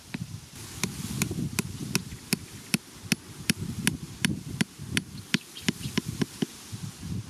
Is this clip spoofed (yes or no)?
no